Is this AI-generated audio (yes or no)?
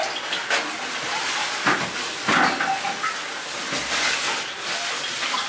no